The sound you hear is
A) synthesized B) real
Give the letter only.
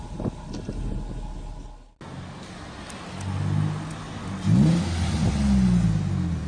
B